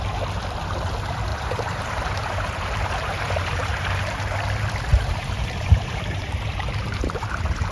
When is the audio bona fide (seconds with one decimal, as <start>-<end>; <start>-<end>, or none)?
0.0-1.3; 4.2-4.9